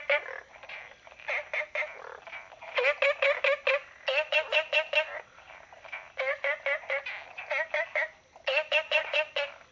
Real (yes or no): yes